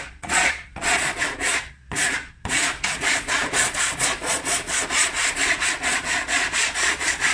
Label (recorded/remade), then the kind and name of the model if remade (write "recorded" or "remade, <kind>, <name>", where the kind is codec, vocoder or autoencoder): remade, vocoder, Vocos